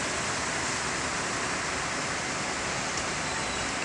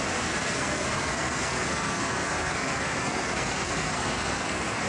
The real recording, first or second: first